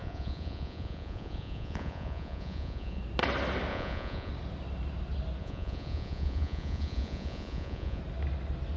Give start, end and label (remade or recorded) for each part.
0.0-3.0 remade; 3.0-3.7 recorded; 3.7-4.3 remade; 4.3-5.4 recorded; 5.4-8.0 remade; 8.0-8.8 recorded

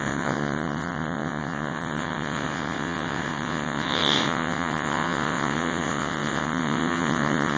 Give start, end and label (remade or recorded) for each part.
0.0-7.6 remade

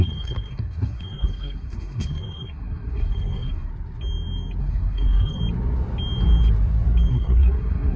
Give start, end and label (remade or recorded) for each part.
0.0-3.7 remade; 3.7-4.6 recorded; 4.6-5.4 remade; 5.4-7.1 recorded; 7.1-8.0 remade